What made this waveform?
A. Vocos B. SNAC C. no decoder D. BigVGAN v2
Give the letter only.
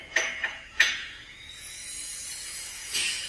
A